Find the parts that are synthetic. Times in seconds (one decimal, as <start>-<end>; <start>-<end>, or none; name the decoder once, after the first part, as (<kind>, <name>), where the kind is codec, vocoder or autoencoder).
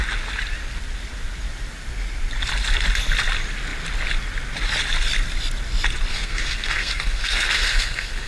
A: 6.1-8.3 (codec, SNAC)